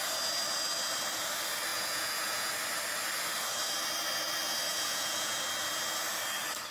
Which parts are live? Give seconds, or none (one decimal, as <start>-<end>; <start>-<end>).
0.0-1.7; 2.5-4.7; 5.4-6.7